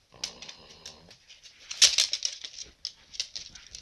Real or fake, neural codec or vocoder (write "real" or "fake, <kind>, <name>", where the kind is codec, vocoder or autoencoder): real